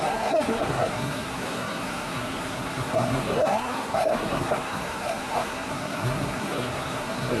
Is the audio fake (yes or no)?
yes